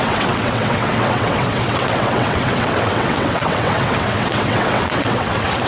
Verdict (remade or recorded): remade